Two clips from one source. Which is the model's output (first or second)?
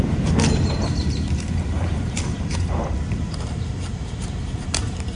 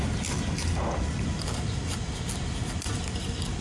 first